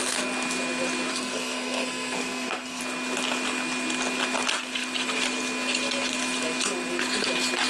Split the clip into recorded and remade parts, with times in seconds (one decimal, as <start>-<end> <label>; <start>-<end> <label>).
0.0-1.1 recorded; 1.1-2.8 remade; 2.8-7.7 recorded